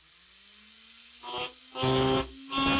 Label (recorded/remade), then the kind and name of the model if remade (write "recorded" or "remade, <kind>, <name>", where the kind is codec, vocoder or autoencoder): recorded